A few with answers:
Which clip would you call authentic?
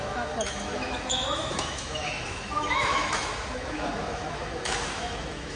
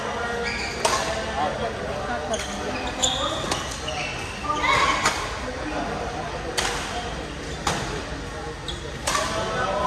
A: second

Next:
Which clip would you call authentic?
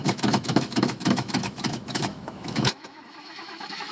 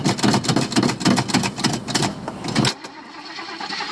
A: second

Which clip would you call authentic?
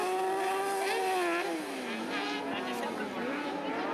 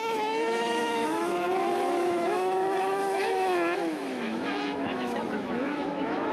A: first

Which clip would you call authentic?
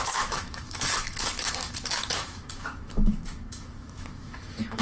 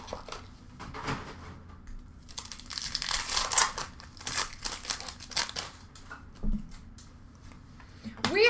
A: second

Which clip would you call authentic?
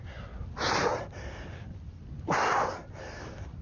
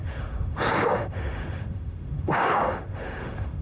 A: first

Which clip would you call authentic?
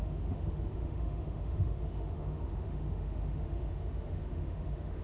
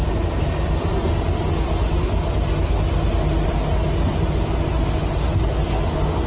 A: second